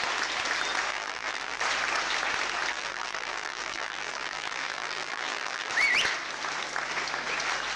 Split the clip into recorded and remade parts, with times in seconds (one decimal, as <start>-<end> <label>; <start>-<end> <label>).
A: 0.0-0.9 recorded; 0.9-1.6 remade; 1.6-2.7 recorded; 2.7-5.7 remade; 5.7-7.8 recorded